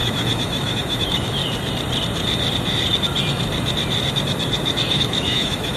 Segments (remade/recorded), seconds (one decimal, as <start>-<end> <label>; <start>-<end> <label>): 0.0-1.4 remade; 1.4-4.9 recorded; 4.9-5.8 remade